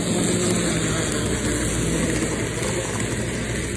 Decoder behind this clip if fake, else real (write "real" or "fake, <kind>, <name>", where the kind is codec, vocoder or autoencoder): real